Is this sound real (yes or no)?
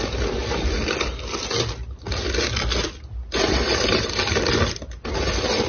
yes